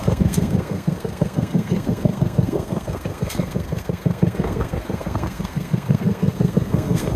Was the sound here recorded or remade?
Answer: remade